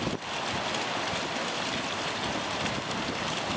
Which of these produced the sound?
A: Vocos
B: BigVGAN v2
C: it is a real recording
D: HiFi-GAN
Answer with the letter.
C